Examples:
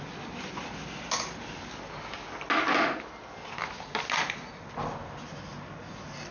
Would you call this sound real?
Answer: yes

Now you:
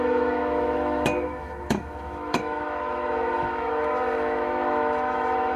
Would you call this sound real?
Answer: no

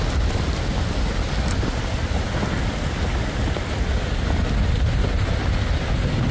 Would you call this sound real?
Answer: yes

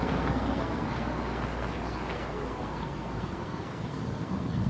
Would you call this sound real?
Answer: no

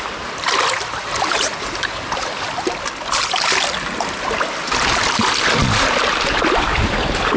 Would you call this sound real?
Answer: yes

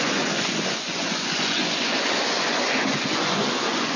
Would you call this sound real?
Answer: no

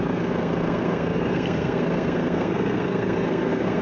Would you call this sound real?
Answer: no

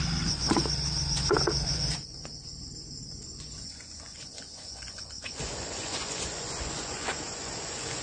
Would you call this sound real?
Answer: no